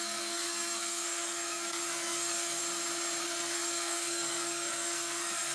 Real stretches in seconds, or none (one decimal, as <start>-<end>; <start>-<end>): 2.6-3.2